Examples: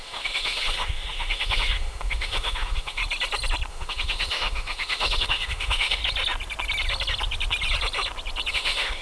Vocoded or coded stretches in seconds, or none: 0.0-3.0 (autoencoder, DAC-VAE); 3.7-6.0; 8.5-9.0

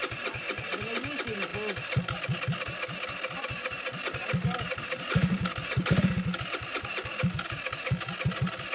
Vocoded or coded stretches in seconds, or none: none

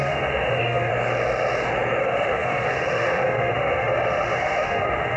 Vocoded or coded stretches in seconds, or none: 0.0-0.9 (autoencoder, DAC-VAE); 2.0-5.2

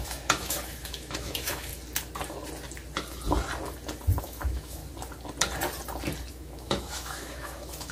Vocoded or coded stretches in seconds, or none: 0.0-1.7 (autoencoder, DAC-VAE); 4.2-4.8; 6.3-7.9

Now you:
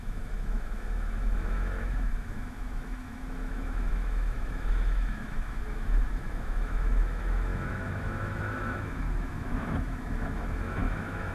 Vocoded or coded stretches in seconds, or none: 0.0-11.3 (autoencoder, DAC-VAE)

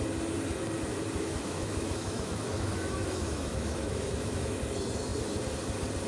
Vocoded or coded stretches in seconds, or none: 0.9-4.6 (autoencoder, DAC-VAE)

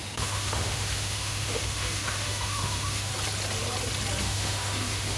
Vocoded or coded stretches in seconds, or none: 0.0-3.1 (autoencoder, DAC-VAE); 4.2-5.2